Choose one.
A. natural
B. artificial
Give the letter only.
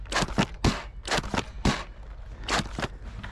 A